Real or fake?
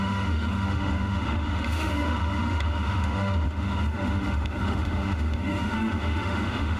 fake